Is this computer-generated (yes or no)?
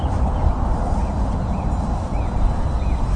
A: no